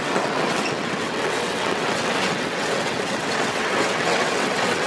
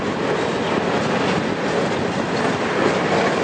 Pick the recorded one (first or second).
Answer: second